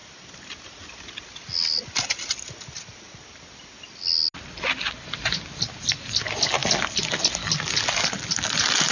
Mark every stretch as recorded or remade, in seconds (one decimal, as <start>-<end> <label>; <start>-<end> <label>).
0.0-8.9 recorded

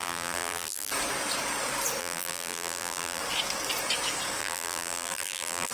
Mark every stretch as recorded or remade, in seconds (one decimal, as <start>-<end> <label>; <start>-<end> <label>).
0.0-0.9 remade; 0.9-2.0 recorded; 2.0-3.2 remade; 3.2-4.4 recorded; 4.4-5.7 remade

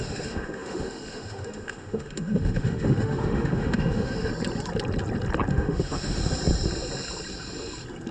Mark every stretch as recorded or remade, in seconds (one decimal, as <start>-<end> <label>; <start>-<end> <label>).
0.0-4.3 remade; 4.3-5.5 recorded; 5.5-6.2 remade; 6.2-8.1 recorded